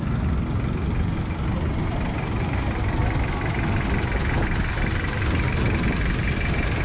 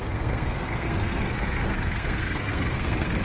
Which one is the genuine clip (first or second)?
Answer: first